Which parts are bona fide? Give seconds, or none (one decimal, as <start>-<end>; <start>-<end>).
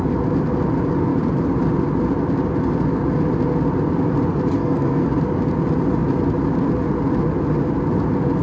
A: 0.0-4.6; 5.1-8.4